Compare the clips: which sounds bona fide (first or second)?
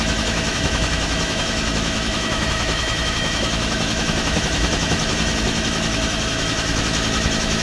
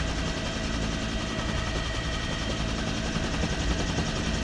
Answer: second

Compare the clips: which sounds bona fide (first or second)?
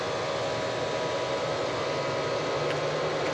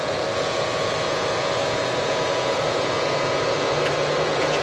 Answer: first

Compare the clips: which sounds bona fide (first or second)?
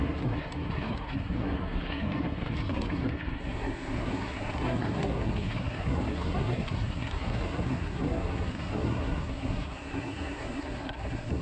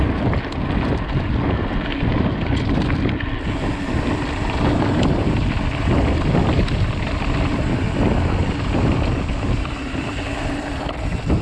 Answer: second